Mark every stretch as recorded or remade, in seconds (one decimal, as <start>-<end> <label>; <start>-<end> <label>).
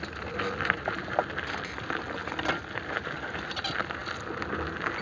0.0-5.0 recorded